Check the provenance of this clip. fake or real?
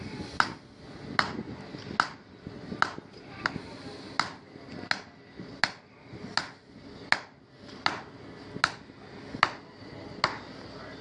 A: real